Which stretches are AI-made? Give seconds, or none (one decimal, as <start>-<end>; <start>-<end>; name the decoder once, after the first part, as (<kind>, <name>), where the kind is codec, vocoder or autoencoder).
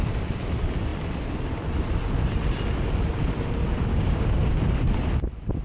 3.9-4.5 (codec, DAC)